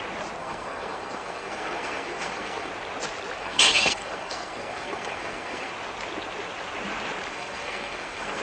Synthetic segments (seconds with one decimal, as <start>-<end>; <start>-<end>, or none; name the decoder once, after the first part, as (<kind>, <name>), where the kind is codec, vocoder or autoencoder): 0.4-2.7 (codec, SNAC); 3.4-5.7; 7.3-8.4

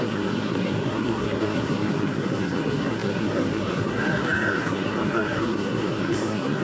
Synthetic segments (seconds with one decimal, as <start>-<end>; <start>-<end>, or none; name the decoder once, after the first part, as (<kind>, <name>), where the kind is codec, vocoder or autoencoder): 0.0-6.6 (codec, SNAC)

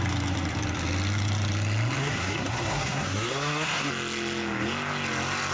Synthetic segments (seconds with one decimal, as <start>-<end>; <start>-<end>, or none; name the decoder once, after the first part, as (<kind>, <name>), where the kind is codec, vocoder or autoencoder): 2.0-3.9 (codec, SNAC)

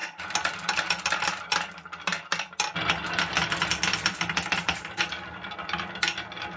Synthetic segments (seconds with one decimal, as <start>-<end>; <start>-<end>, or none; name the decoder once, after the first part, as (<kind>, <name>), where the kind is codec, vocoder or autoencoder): none